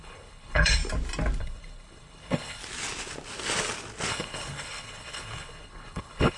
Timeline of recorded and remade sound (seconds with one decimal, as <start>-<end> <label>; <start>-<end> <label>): 0.0-0.8 remade; 0.8-1.4 recorded; 1.4-2.6 remade; 2.6-4.1 recorded; 4.1-6.4 remade